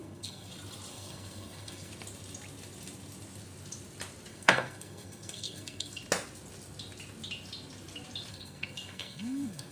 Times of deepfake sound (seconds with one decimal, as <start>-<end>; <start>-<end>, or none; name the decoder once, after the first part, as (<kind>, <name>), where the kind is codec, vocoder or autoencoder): 0.0-0.5 (codec, SNAC); 0.9-1.9; 4.3-6.0; 8.3-9.7